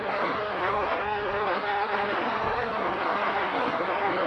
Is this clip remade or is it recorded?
remade